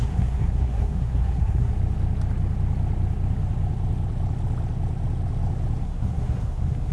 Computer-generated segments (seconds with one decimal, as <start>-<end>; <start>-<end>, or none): 0.0-1.7; 5.8-6.9